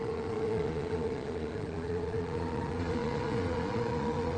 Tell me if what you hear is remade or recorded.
remade